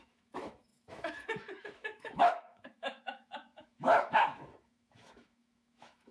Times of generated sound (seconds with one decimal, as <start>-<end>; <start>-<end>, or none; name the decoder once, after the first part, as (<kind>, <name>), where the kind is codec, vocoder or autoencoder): 0.0-6.1 (autoencoder, DAC-VAE)